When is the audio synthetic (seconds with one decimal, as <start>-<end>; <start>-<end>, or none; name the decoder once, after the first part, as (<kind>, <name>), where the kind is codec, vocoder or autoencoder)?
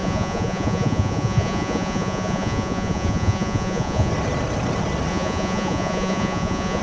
0.0-4.1 (vocoder, Vocos); 5.1-6.8